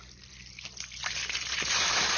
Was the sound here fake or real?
real